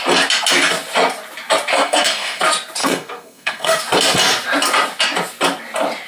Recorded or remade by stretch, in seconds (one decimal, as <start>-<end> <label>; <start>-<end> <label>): 0.0-1.7 recorded; 1.7-2.4 remade; 2.4-2.8 recorded; 2.8-3.8 remade; 3.8-6.1 recorded